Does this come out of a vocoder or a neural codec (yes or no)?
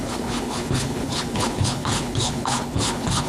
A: yes